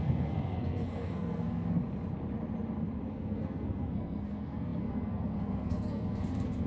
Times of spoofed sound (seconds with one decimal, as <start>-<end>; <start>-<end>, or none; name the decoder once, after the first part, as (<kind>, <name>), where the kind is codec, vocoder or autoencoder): 0.0-1.8 (codec, SNAC); 3.1-6.7